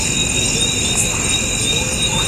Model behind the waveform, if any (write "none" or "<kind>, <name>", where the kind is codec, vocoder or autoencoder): none